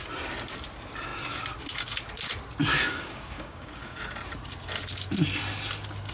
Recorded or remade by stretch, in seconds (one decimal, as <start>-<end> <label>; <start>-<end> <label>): 0.0-2.7 recorded; 2.7-4.0 remade; 4.0-6.1 recorded

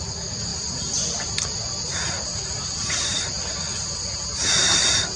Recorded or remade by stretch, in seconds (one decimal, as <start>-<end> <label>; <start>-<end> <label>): 0.0-5.2 recorded

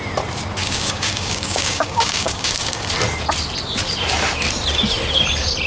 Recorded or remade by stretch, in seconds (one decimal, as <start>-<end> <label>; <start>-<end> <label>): 0.0-0.6 recorded; 0.6-2.8 remade; 2.8-5.7 recorded

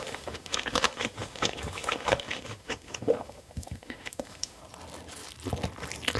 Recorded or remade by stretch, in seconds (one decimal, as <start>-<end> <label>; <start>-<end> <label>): 0.0-4.6 remade; 4.6-6.2 recorded

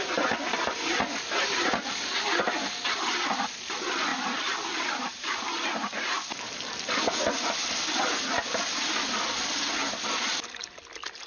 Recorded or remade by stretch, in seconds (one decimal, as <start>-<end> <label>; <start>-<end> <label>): 0.0-4.1 recorded; 4.1-6.6 remade; 6.6-11.3 recorded

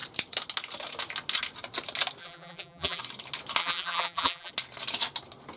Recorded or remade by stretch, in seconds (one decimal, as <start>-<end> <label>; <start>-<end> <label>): 0.0-2.2 recorded; 2.2-3.0 remade; 3.0-3.6 recorded; 3.6-4.5 remade; 4.5-5.6 recorded